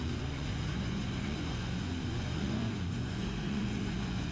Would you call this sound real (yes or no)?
no